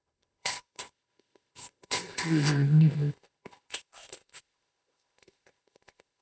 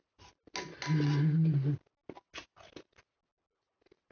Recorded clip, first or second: second